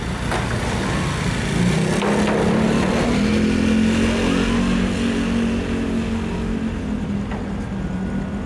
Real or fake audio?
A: real